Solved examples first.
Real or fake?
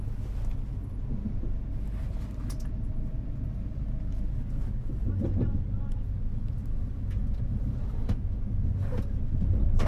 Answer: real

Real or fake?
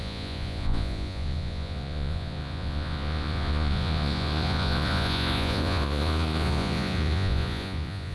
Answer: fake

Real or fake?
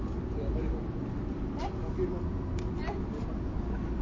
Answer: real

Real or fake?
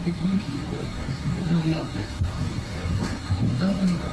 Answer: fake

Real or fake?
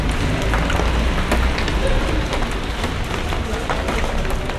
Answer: real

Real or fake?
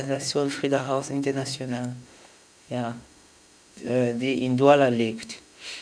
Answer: fake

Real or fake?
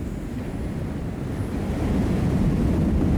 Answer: real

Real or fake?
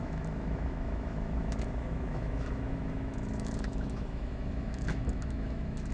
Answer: fake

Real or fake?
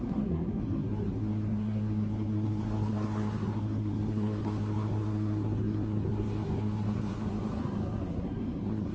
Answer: fake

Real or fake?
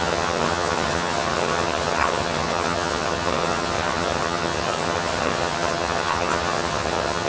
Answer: fake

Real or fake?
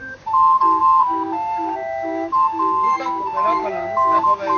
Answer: fake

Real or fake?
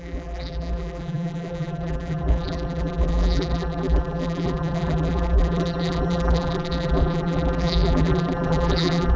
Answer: fake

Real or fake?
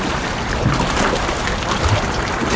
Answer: real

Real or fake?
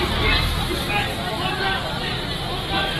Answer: real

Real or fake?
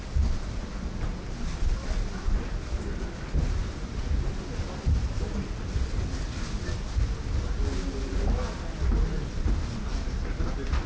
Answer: real